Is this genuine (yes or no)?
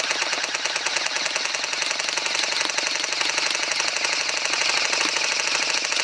yes